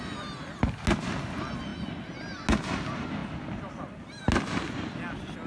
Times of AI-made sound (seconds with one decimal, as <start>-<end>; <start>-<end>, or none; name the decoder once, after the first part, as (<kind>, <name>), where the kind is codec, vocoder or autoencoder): none